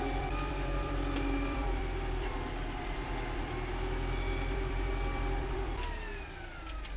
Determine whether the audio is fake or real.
fake